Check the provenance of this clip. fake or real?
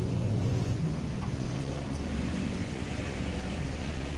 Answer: fake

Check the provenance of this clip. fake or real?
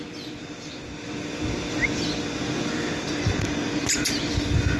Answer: real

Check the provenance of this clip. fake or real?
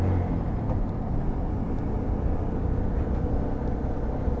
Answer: real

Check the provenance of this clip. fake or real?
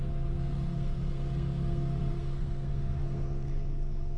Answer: fake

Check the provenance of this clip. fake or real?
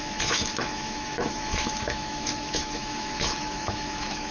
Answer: fake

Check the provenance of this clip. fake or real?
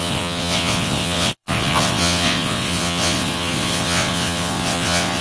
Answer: fake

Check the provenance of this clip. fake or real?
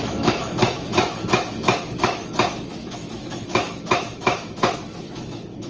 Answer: fake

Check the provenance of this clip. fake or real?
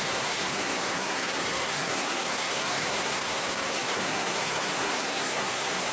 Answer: fake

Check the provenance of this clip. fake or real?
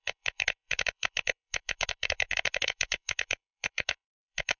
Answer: fake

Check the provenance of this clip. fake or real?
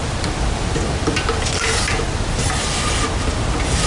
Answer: real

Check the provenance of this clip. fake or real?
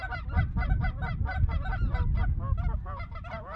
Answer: real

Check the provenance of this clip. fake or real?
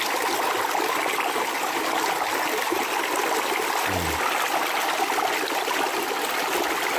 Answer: real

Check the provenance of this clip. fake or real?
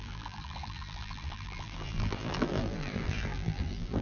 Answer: fake